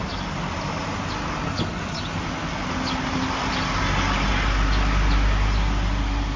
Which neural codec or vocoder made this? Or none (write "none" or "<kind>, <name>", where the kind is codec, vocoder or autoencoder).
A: none